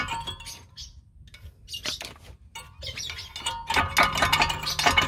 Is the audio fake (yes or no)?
no